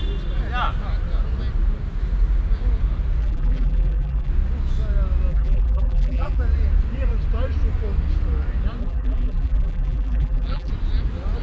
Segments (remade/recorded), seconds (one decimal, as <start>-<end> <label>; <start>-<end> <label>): 0.0-3.2 recorded; 3.2-4.3 remade; 4.3-5.3 recorded; 5.3-6.4 remade; 6.4-8.8 recorded; 8.8-10.7 remade; 10.7-11.4 recorded

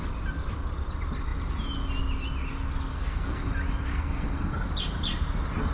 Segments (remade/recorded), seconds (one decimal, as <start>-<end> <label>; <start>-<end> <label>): 0.0-2.9 recorded; 2.9-3.5 remade; 3.5-3.9 recorded; 3.9-4.7 remade; 4.7-5.7 recorded

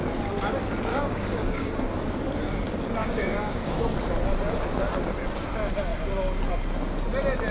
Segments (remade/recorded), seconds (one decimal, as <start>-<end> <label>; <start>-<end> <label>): 0.0-0.9 recorded; 0.9-1.7 remade; 1.7-3.0 recorded; 3.0-3.8 remade; 3.8-7.5 recorded

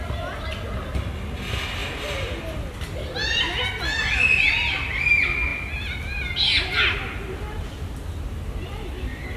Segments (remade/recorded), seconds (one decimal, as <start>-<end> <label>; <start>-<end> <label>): 0.0-9.4 recorded

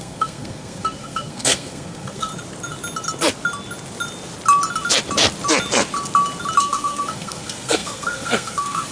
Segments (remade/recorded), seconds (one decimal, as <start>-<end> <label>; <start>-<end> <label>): 0.0-2.3 remade; 2.3-6.6 recorded; 6.6-8.9 remade

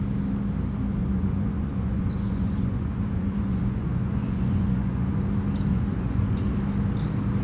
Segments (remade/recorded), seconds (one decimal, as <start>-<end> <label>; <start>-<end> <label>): 0.0-1.0 recorded; 1.0-5.2 remade; 5.2-5.7 recorded; 5.7-6.4 remade; 6.4-7.4 recorded

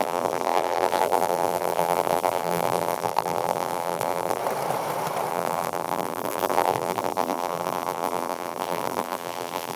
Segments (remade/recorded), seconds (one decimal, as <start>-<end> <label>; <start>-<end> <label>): 0.0-4.4 remade; 4.4-5.3 recorded; 5.3-9.8 remade

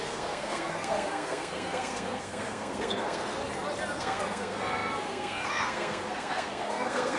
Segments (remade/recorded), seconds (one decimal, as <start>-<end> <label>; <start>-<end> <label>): 0.0-3.4 remade; 3.4-4.0 recorded; 4.0-7.2 remade